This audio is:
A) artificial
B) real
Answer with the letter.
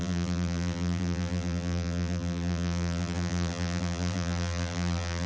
A